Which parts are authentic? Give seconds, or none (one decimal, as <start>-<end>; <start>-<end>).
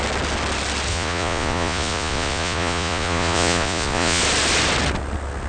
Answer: 0.0-0.9; 4.2-5.5